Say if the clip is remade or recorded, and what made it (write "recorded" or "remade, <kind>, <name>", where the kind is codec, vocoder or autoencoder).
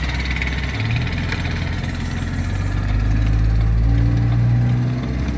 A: recorded